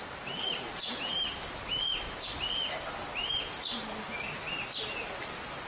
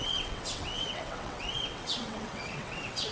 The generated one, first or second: second